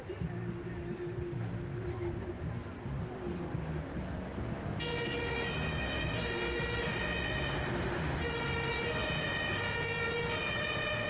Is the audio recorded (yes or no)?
yes